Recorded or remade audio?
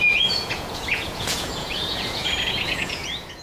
remade